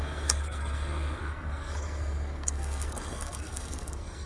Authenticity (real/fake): fake